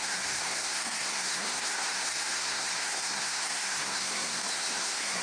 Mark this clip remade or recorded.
remade